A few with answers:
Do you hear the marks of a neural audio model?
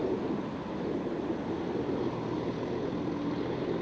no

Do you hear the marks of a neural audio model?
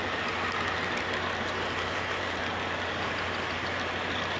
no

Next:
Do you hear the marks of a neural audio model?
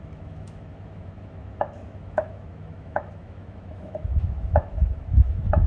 yes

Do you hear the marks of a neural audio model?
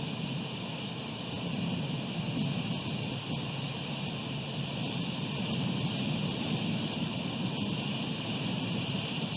no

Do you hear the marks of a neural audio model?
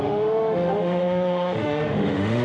yes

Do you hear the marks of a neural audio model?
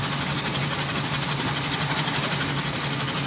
no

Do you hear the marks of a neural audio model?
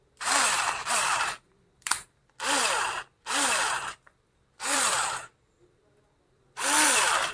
yes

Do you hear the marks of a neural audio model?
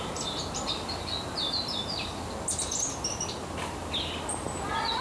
no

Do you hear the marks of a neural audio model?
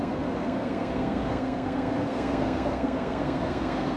yes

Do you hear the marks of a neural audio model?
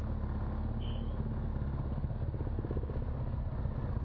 no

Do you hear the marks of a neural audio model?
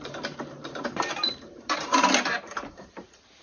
yes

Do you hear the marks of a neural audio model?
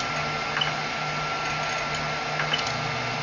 no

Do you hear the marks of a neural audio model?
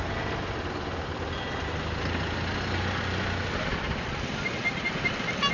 no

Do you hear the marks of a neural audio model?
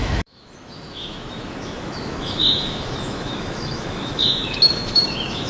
yes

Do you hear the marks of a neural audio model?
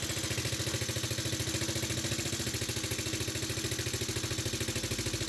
no